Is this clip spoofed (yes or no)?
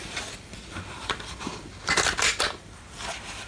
no